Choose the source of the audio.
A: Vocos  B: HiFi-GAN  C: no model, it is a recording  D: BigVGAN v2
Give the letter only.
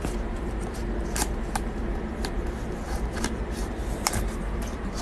D